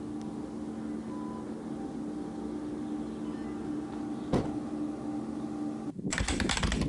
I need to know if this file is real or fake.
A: real